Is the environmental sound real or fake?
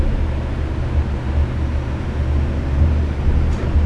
real